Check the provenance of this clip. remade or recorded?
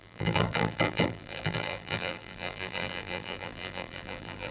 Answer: remade